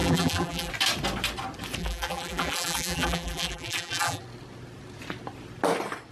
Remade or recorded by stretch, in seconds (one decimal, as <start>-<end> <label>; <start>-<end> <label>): 0.0-0.7 remade; 0.7-1.8 recorded; 1.8-4.2 remade; 4.2-6.1 recorded